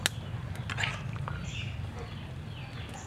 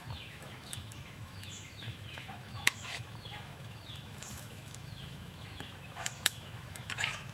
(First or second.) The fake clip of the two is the second